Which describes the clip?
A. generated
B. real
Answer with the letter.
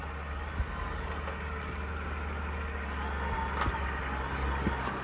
B